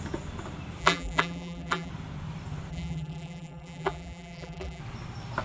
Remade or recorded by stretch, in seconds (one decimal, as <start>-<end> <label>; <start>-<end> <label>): 0.0-0.8 recorded; 0.8-1.9 remade; 1.9-2.7 recorded; 2.7-4.8 remade; 4.8-5.4 recorded